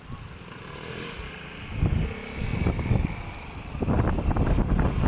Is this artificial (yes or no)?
no